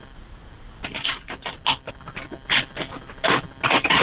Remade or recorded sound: recorded